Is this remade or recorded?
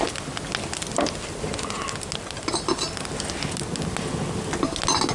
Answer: recorded